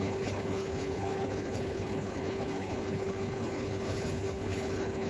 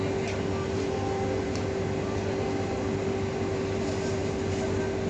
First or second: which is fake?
first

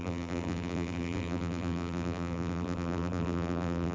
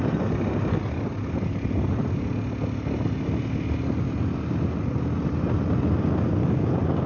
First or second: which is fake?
first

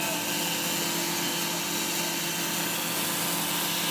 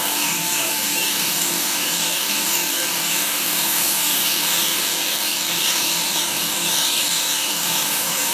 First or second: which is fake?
second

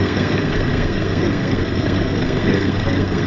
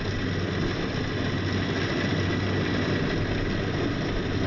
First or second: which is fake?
first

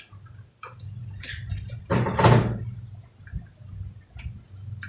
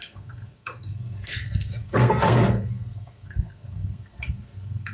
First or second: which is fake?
second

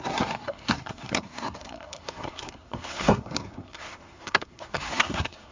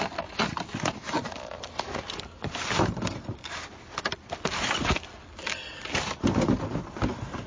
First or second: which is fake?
first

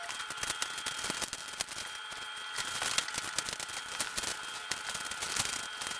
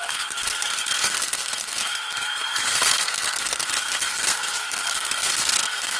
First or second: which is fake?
second